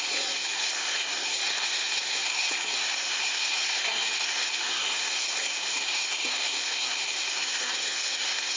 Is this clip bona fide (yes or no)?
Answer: no